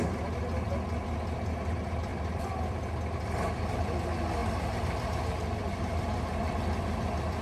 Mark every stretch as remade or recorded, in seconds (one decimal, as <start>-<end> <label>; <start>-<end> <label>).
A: 0.0-2.1 recorded; 2.1-2.9 remade; 2.9-4.4 recorded; 4.4-7.4 remade